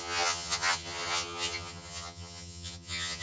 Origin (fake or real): fake